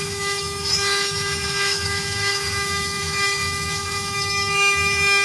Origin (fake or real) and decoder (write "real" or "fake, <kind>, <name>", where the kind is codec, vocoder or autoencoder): fake, autoencoder, DAC-VAE